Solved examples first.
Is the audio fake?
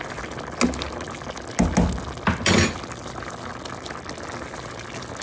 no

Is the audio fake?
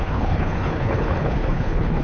yes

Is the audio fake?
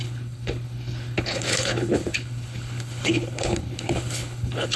yes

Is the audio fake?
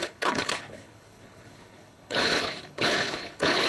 yes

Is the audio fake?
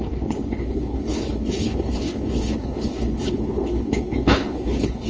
yes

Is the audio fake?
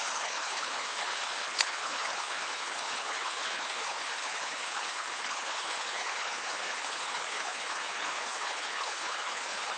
yes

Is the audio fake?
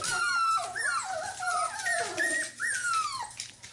no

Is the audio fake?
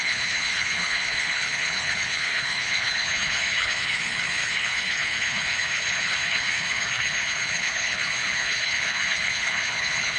yes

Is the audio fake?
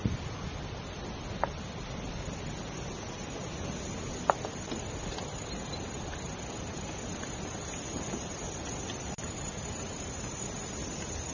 no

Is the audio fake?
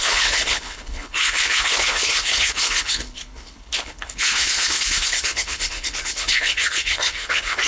yes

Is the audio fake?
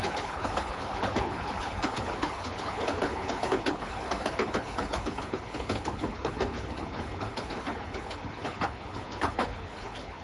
yes